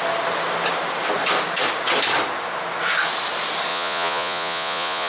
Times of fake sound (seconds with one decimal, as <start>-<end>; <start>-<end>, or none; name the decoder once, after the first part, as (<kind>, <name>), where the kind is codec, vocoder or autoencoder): 3.7-5.1 (vocoder, Vocos)